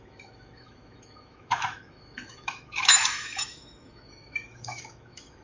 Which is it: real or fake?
fake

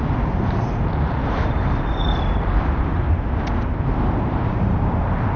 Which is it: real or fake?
fake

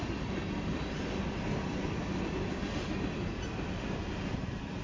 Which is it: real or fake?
real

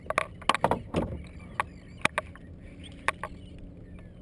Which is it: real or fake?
real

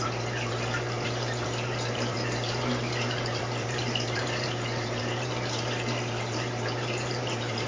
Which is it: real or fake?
fake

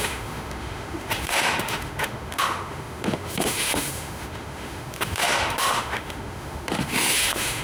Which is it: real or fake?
fake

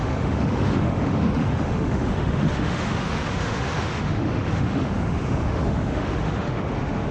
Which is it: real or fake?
fake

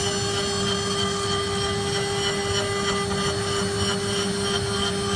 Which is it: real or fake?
real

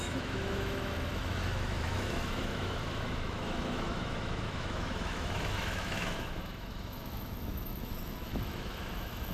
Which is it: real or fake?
fake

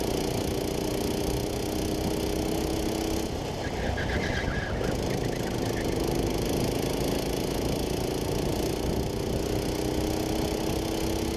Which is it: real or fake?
real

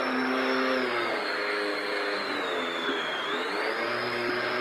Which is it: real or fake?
fake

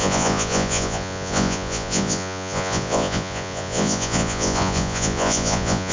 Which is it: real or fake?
fake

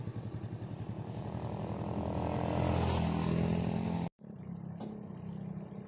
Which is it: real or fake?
real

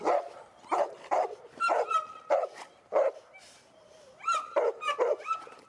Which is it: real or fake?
fake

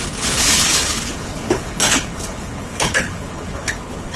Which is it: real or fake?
fake